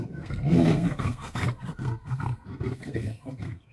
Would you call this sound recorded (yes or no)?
no